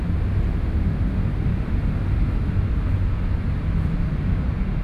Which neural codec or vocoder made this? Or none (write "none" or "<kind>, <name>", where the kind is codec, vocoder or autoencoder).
none